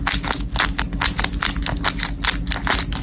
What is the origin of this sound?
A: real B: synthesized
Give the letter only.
A